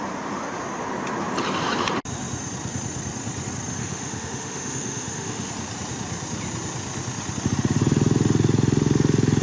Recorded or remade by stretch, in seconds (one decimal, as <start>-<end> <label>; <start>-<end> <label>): 0.0-3.8 recorded; 3.8-5.5 remade; 5.5-9.4 recorded